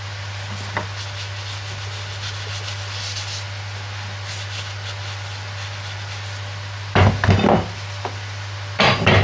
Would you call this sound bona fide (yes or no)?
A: yes